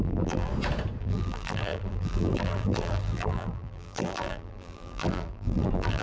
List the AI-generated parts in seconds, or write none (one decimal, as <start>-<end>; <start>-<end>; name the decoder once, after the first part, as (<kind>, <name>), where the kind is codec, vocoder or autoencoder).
0.0-0.5 (vocoder, BigVGAN v2); 1.0-6.0